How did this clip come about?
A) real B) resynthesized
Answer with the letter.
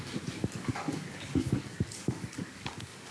B